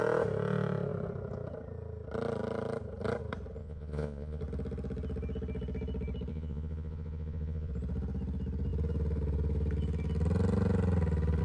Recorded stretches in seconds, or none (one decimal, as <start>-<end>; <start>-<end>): 0.0-3.6; 4.4-6.3; 7.7-11.4